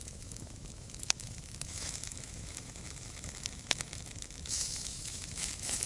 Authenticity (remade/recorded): remade